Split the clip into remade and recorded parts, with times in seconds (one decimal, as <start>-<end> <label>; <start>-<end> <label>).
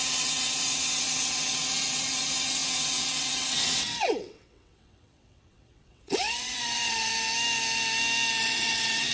0.0-7.1 remade; 7.1-8.4 recorded; 8.4-9.1 remade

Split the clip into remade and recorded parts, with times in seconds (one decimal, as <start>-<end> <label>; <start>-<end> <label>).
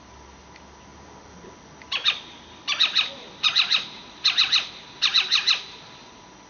0.0-6.5 recorded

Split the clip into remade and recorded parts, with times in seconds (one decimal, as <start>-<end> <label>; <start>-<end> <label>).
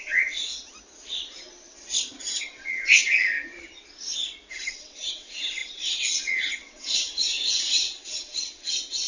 0.0-0.5 remade; 0.5-2.4 recorded; 2.4-3.3 remade; 3.3-4.5 recorded; 4.5-9.1 remade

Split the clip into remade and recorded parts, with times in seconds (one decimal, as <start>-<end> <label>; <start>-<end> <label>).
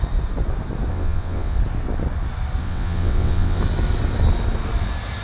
0.0-0.9 recorded; 0.9-1.6 remade; 1.6-2.6 recorded; 2.6-3.6 remade; 3.6-5.2 recorded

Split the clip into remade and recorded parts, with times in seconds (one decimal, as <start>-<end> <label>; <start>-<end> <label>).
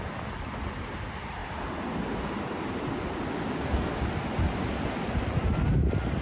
0.0-6.2 recorded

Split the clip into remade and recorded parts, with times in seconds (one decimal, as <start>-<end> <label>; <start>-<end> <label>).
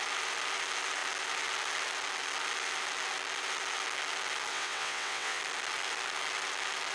0.0-4.5 recorded; 4.5-5.4 remade; 5.4-6.9 recorded